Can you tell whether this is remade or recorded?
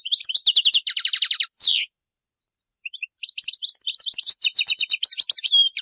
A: remade